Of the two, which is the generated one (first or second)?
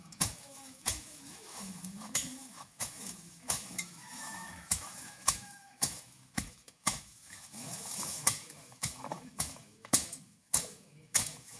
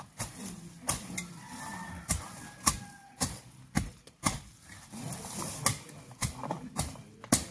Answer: first